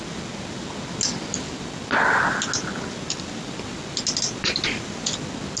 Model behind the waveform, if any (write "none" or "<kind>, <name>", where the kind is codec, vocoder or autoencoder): none